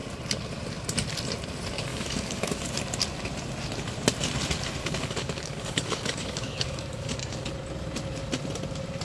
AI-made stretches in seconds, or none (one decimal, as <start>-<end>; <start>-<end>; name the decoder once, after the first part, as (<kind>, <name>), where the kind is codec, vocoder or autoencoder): 1.9-2.7 (codec, DAC); 4.8-7.5